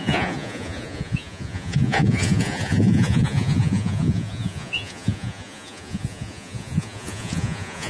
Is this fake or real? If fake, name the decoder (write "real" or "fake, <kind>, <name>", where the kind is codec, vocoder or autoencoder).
fake, vocoder, Vocos